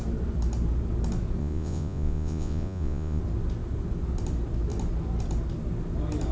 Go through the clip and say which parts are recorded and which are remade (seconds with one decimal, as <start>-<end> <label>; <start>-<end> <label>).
0.0-1.4 recorded; 1.4-3.2 remade; 3.2-6.3 recorded